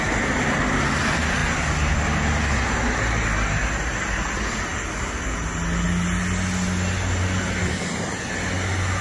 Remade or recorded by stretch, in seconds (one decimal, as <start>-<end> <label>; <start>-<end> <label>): 0.0-9.0 recorded